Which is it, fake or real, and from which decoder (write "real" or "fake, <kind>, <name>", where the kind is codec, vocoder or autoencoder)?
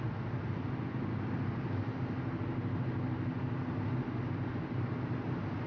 real